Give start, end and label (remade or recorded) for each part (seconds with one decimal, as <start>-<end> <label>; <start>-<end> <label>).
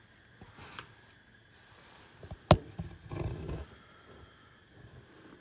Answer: 0.0-5.4 recorded